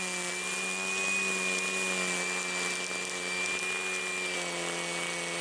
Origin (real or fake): real